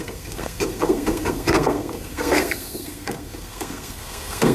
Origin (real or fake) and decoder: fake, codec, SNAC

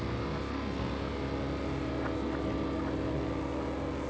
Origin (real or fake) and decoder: real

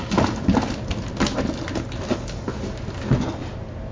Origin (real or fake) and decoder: real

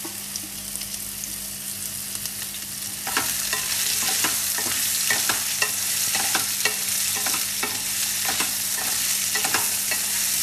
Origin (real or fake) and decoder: real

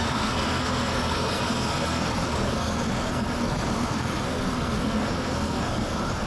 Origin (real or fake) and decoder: fake, codec, SNAC